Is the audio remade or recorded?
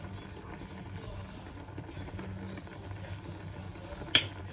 recorded